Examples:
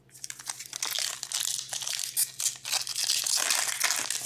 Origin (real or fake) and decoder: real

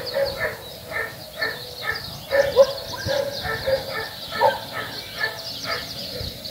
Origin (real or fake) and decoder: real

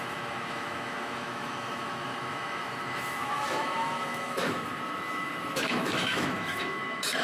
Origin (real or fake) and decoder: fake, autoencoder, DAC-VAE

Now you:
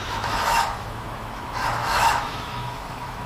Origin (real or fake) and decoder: fake, autoencoder, DAC-VAE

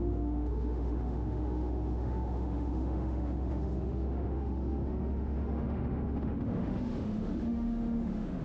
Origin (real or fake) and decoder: fake, autoencoder, DAC-VAE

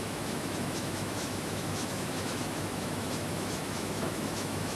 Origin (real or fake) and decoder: fake, autoencoder, DAC-VAE